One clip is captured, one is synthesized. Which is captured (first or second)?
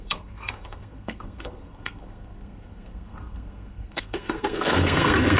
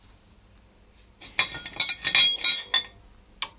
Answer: second